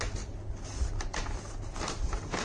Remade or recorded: recorded